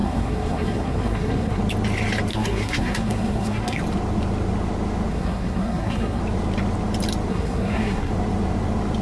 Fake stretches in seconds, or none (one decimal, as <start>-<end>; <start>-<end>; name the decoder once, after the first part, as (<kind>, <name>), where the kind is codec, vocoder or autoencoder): 0.0-1.6 (codec, SNAC); 2.3-3.8; 5.1-6.2; 7.3-8.1